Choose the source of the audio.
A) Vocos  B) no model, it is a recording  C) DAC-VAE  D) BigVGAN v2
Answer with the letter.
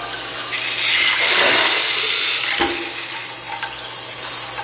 B